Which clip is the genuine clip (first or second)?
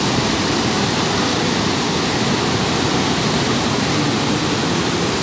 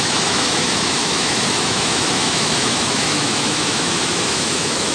first